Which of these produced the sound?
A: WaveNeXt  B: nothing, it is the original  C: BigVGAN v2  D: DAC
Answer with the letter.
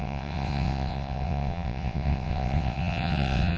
A